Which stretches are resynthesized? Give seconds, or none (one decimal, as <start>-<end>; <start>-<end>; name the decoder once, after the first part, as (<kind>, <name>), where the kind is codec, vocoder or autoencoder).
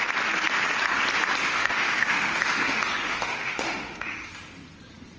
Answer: 1.4-4.3 (autoencoder, DAC-VAE)